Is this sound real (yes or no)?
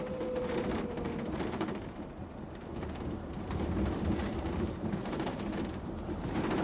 no